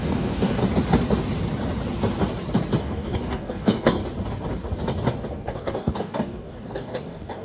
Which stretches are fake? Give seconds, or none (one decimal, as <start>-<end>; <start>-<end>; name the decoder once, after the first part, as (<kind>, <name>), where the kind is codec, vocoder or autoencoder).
0.0-0.6 (codec, DAC); 2.8-4.0; 5.3-7.4